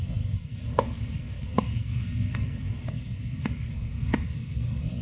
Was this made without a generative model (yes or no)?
no